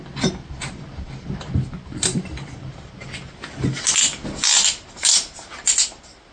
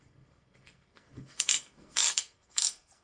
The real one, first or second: first